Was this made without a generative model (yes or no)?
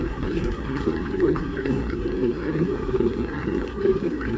no